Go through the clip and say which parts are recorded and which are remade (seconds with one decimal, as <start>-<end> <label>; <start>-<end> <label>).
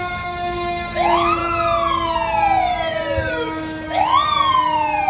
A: 0.0-1.4 remade; 1.4-3.3 recorded; 3.3-4.1 remade; 4.1-5.1 recorded